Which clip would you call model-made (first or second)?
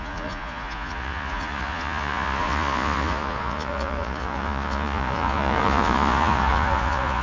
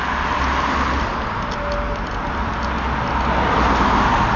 first